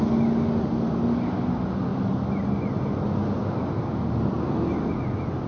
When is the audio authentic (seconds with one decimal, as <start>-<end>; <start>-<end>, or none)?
0.0-5.5